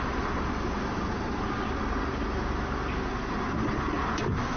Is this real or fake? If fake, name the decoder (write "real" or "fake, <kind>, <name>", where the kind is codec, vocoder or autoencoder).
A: real